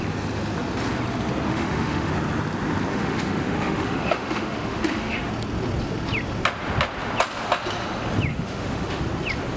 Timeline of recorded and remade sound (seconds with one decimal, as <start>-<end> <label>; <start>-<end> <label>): 0.0-1.5 recorded; 1.5-2.1 remade; 2.1-2.9 recorded; 2.9-5.3 remade; 5.3-8.3 recorded; 8.3-9.0 remade; 9.0-9.6 recorded